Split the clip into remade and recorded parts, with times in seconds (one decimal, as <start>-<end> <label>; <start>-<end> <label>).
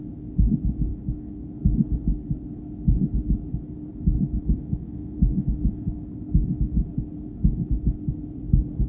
0.0-0.9 recorded; 0.9-1.6 remade; 1.6-3.9 recorded; 3.9-6.9 remade; 6.9-8.9 recorded